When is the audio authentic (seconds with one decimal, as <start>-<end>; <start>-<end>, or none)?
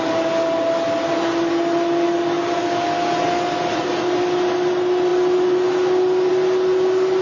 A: 0.0-7.2